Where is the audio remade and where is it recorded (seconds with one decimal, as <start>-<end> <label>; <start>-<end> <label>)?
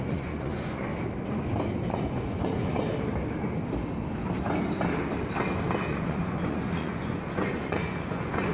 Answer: 0.0-0.9 remade; 0.9-1.9 recorded; 1.9-2.9 remade; 2.9-5.9 recorded; 5.9-8.5 remade